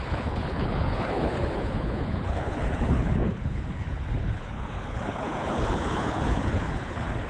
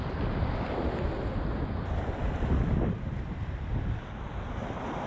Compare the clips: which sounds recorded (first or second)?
second